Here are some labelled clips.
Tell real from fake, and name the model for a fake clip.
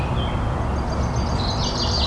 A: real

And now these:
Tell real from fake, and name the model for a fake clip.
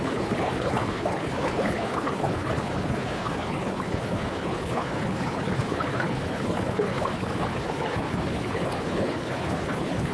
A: fake, codec, HILCodec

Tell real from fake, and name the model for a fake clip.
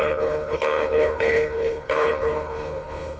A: fake, codec, HILCodec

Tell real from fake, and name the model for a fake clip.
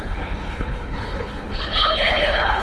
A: fake, codec, HILCodec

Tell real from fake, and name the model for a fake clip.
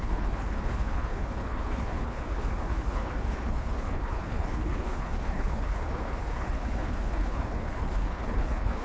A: fake, codec, HILCodec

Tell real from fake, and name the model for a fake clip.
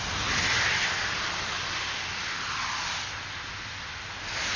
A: real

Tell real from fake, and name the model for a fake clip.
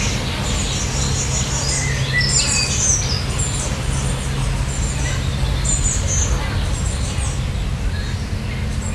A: real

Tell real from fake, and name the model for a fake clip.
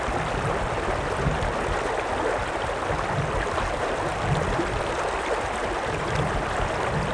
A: real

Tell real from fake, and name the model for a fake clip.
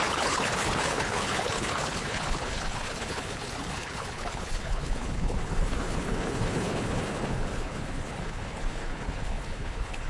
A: fake, codec, HILCodec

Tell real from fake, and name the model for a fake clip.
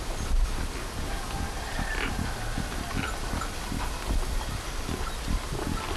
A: real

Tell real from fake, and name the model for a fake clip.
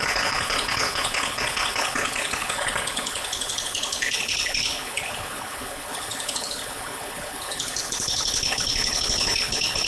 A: fake, codec, HILCodec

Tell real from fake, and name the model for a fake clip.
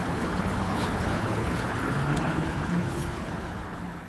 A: fake, codec, HILCodec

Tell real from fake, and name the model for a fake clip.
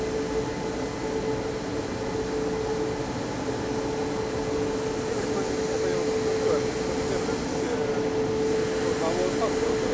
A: real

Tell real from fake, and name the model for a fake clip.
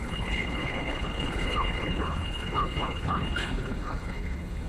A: fake, codec, HILCodec